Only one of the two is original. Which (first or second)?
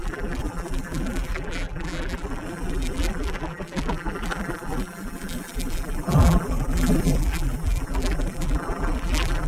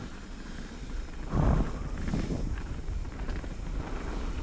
second